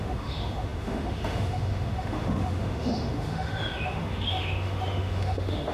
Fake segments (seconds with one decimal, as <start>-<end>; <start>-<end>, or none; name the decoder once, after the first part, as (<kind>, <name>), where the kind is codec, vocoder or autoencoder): 0.0-5.7 (autoencoder, DAC-VAE)